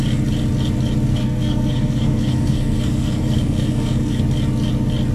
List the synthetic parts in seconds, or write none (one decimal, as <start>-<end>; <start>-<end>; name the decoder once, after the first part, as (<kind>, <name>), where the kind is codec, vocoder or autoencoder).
1.1-4.2 (codec, SNAC)